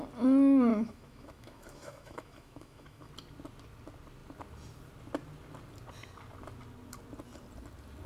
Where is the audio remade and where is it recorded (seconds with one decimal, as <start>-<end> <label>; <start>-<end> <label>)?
0.0-0.7 recorded; 0.7-3.1 remade; 3.1-8.1 recorded

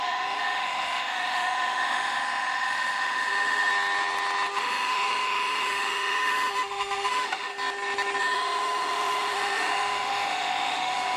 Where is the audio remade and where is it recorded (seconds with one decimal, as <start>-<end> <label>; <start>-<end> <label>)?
0.0-3.7 remade; 3.7-4.6 recorded; 4.6-7.5 remade; 7.5-8.2 recorded; 8.2-11.2 remade

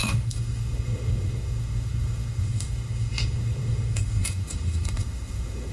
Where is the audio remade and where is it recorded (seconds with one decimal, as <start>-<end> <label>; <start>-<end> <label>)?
0.0-5.7 remade

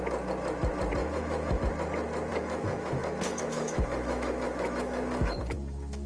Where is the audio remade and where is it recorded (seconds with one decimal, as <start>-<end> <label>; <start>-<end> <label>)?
0.0-1.0 recorded; 1.0-1.6 remade; 1.6-2.3 recorded; 2.3-6.1 remade

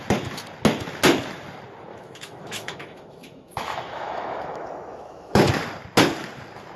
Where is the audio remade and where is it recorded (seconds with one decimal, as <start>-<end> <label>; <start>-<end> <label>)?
0.0-1.9 recorded; 1.9-5.4 remade; 5.4-6.8 recorded